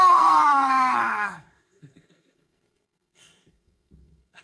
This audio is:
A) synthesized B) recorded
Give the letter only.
A